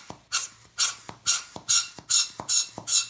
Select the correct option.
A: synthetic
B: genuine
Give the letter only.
B